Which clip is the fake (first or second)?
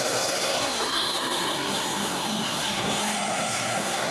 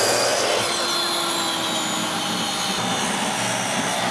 first